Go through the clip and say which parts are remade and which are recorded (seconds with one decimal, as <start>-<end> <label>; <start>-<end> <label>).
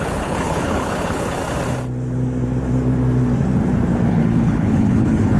0.0-1.4 remade; 1.4-4.1 recorded; 4.1-5.4 remade